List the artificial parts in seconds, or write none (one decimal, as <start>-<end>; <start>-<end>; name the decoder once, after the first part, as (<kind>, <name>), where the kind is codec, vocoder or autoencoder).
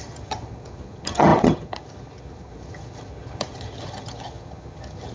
0.0-5.1 (vocoder, HiFi-GAN)